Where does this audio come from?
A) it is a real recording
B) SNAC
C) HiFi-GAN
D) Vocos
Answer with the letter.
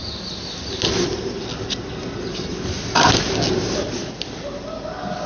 A